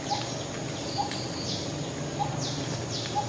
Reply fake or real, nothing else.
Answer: real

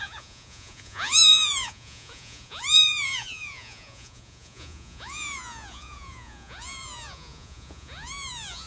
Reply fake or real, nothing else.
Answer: fake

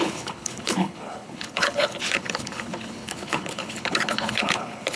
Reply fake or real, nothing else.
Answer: fake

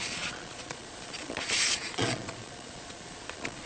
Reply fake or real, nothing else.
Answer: fake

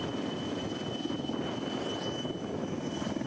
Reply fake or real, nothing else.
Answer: real